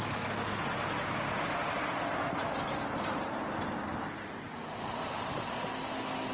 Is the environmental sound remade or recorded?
recorded